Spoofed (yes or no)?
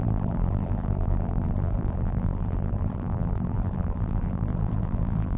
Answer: yes